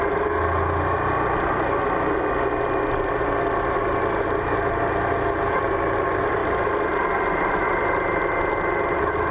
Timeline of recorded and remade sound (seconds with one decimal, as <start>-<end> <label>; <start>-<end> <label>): 0.0-9.3 recorded